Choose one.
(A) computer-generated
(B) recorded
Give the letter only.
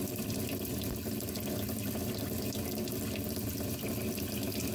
B